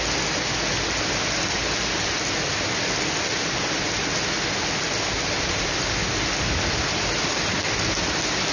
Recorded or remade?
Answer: recorded